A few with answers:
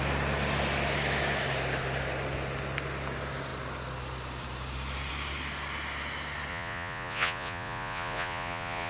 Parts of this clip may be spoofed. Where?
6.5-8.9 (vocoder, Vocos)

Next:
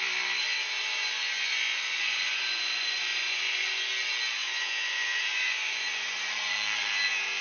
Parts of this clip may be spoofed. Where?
0.8-3.9 (vocoder, Vocos); 4.4-6.9

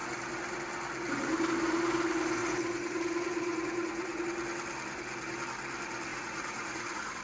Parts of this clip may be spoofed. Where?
2.4-4.2 (vocoder, Vocos); 6.1-7.2

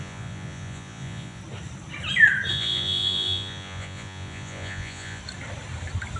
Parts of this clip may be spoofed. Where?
0.0-1.4 (vocoder, Vocos); 2.5-5.2

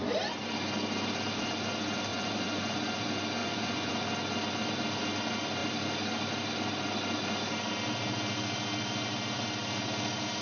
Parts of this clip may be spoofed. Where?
2.1-2.6 (vocoder, Vocos); 3.4-3.9

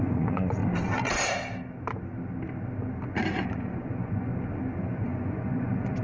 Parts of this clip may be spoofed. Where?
0.0-0.6 (vocoder, Vocos); 3.2-4.3; 4.8-6.0

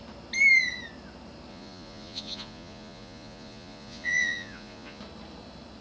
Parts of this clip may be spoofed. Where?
1.5-5.0 (vocoder, Vocos)

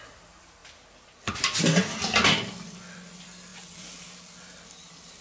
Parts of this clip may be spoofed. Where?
none